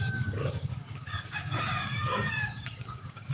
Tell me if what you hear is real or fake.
fake